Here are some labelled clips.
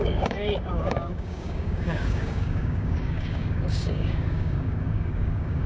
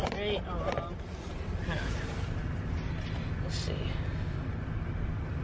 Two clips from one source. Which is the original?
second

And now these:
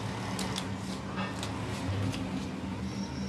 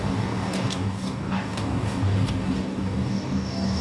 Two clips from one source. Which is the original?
first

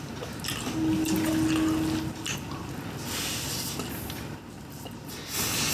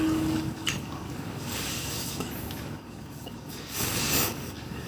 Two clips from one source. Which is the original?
first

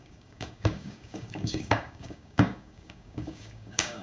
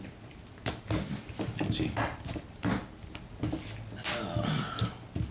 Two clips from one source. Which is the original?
second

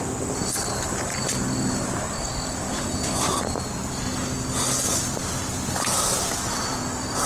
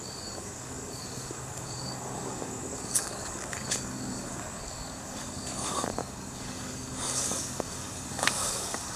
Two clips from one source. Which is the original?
first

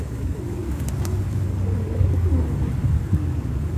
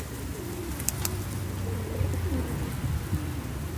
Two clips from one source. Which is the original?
second